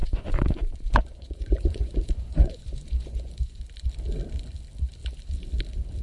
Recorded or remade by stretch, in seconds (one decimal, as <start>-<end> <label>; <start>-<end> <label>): 0.0-3.6 remade; 3.6-6.0 recorded